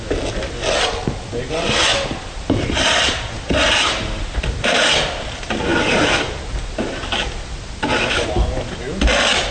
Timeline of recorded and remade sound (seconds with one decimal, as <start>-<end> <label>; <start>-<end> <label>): 0.0-1.9 recorded; 1.9-4.4 remade; 4.4-9.5 recorded